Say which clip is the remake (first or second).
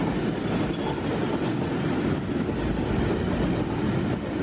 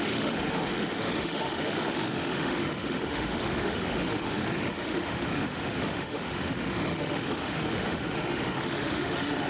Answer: second